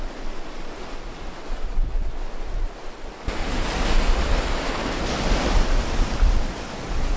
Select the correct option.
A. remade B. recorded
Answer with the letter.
B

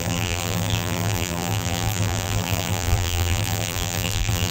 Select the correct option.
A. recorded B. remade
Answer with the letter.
B